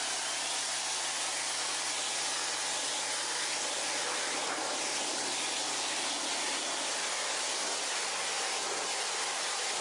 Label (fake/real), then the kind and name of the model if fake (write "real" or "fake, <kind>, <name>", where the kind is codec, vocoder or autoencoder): real